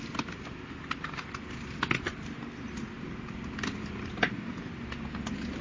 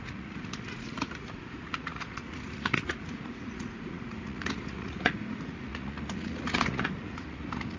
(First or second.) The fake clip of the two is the second